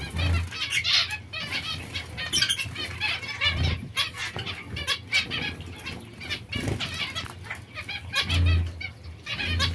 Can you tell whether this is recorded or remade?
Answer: recorded